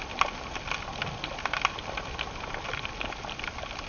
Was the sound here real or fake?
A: real